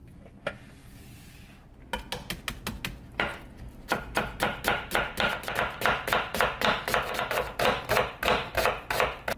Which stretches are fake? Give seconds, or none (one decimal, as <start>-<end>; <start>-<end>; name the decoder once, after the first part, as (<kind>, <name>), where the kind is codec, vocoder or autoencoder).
none